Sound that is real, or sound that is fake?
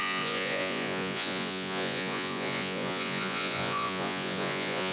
fake